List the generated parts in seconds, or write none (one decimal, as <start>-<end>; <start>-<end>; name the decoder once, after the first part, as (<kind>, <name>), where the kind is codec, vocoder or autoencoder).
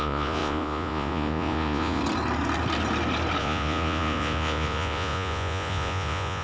0.0-2.0 (vocoder, Vocos); 3.4-6.4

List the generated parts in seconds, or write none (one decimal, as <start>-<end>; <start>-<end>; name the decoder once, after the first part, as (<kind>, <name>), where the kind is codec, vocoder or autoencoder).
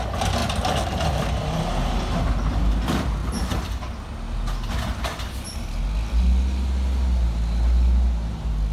3.2-3.7 (vocoder, BigVGAN v2)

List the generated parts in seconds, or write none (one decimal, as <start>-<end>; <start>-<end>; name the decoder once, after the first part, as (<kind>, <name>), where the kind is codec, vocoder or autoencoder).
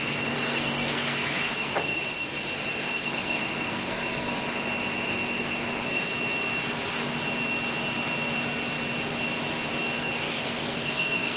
0.0-2.0 (codec, SNAC); 2.7-4.3; 5.4-6.1; 10.0-11.4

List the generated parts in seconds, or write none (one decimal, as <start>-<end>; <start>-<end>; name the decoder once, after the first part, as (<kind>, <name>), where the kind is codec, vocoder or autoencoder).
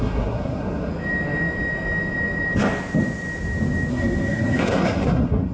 0.0-0.9 (codec, SNAC); 3.9-5.5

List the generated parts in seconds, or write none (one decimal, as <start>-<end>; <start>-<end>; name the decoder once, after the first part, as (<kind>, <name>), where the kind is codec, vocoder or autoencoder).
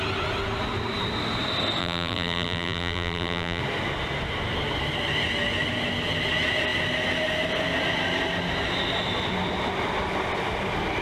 1.8-3.6 (vocoder, BigVGAN v2)